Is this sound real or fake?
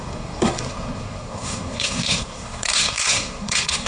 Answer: fake